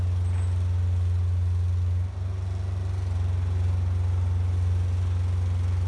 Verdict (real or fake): real